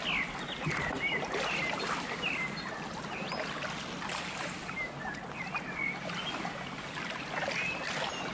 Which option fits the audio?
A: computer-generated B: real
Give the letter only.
B